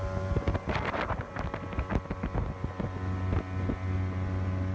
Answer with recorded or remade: recorded